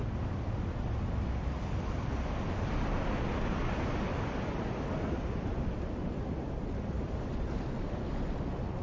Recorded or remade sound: recorded